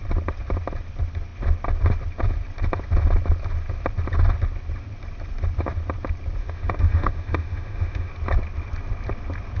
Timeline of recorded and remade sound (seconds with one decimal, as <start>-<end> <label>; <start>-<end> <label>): 0.0-6.4 recorded; 6.4-8.1 remade; 8.1-9.6 recorded